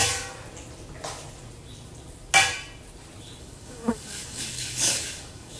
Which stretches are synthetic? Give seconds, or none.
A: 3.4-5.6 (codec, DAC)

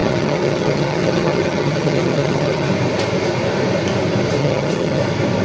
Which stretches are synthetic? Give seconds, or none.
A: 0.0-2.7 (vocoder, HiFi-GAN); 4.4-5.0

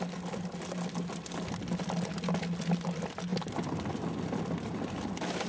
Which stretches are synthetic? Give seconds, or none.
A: none

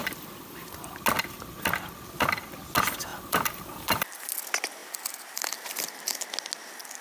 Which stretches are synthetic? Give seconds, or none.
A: 0.0-1.0 (vocoder, BigVGAN v2); 3.1-4.3

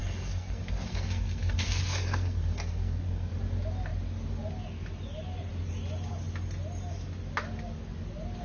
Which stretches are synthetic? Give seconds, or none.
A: 0.0-3.3 (codec, SNAC)

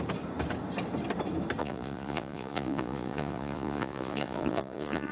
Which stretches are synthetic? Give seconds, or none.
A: 1.6-5.1 (vocoder, Vocos)